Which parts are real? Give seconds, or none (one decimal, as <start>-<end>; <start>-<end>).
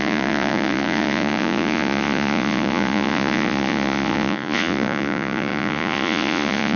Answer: none